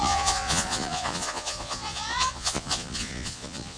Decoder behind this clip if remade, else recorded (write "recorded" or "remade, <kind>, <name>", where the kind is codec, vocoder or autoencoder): remade, vocoder, Vocos